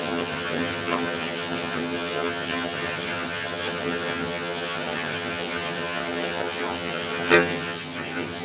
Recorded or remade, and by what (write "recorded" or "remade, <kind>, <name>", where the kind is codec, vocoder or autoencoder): remade, vocoder, HiFi-GAN